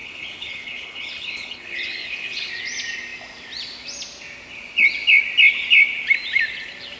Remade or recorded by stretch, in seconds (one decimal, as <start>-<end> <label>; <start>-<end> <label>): 0.0-2.5 remade; 2.5-7.0 recorded